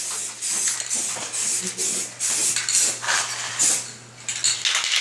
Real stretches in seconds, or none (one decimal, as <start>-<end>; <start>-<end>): 0.0-5.0